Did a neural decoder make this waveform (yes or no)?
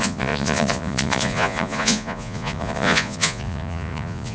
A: yes